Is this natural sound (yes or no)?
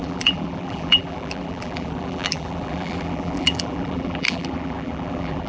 no